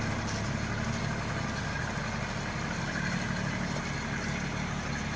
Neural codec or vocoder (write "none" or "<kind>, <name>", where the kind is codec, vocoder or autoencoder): none